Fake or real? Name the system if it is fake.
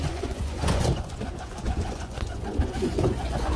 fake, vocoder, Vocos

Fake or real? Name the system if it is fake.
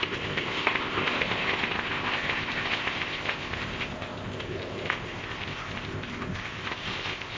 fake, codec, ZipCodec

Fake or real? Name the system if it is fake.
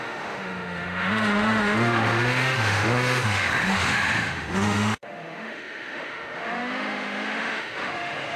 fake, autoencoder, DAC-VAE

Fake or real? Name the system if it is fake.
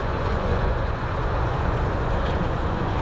fake, vocoder, Vocos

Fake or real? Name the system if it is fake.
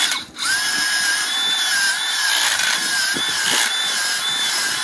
real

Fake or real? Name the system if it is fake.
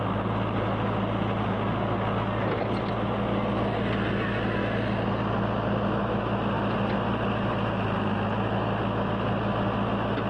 real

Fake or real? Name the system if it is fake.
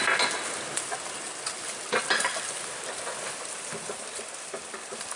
real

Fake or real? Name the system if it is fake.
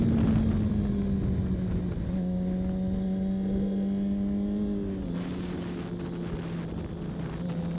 real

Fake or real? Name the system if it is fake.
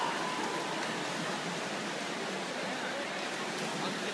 real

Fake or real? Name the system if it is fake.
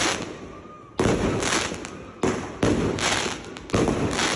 real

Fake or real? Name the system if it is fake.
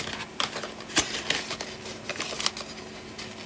real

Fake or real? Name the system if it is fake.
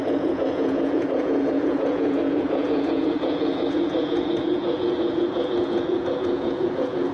fake, vocoder, Vocos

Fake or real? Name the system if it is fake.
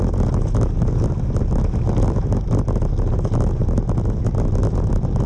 real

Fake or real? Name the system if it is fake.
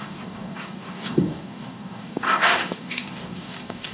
fake, codec, DAC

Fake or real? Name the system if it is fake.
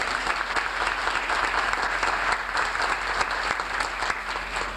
real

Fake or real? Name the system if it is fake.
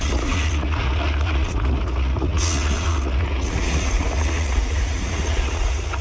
fake, vocoder, Vocos